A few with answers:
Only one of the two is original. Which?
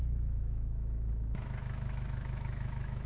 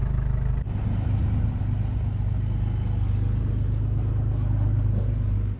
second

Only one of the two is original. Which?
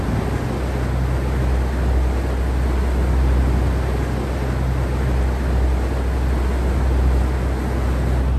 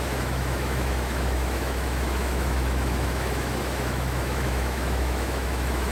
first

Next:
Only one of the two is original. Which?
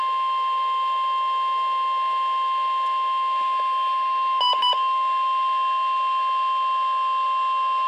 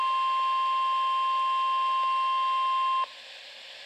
second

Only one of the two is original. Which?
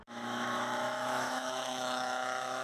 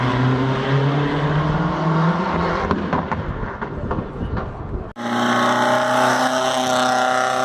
second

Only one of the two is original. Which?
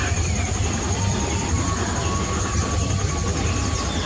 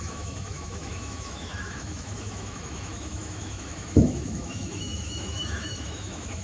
first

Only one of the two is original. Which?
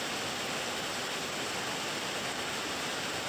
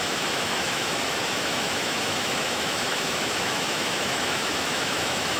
first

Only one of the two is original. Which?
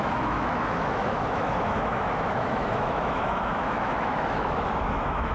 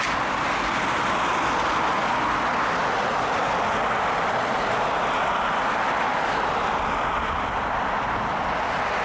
second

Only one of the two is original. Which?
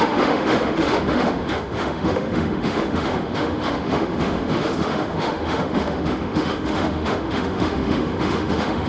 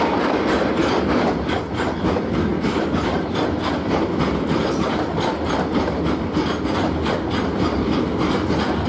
second